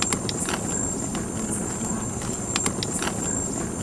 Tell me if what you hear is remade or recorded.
recorded